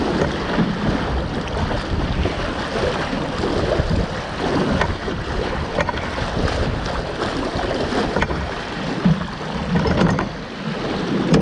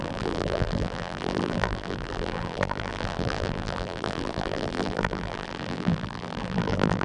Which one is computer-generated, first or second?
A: second